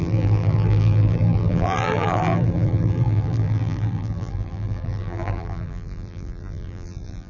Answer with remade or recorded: remade